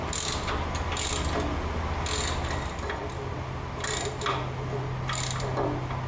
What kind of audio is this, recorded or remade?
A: recorded